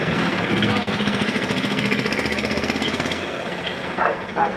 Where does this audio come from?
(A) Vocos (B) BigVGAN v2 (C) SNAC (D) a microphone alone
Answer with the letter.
C